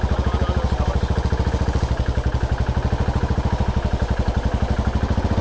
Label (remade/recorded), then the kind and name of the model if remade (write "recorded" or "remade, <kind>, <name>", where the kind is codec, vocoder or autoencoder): recorded